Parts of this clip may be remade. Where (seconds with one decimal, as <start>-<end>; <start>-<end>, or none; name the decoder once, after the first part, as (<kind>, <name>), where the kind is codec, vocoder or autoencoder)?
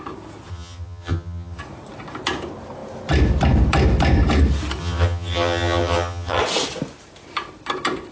0.5-1.6 (vocoder, HiFi-GAN); 4.8-6.4